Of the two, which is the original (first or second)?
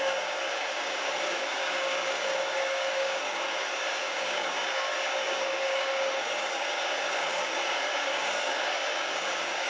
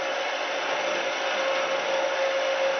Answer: second